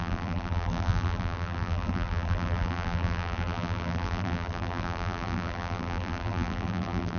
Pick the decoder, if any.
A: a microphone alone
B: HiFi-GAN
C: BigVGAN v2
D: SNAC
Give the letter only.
C